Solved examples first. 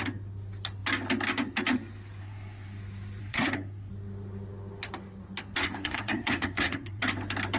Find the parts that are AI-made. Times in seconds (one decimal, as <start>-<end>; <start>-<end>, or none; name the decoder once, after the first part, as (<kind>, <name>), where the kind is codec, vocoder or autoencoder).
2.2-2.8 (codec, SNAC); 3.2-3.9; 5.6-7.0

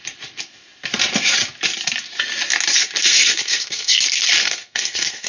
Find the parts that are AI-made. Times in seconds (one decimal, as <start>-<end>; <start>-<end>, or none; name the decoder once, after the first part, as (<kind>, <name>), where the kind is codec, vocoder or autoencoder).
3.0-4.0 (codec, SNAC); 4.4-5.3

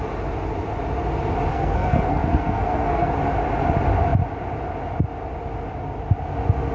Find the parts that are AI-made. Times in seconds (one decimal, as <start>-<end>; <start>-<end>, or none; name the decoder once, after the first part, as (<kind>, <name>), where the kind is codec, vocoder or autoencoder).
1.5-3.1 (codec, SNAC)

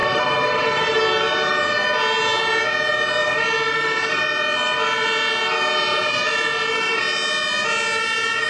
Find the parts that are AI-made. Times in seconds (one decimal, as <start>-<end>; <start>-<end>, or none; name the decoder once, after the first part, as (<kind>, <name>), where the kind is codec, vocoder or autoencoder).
0.0-1.0 (vocoder, BigVGAN v2); 3.2-4.2; 5.9-7.0